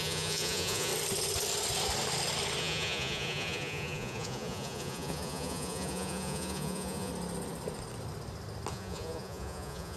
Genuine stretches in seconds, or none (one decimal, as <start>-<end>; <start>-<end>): 0.9-2.6; 7.1-8.7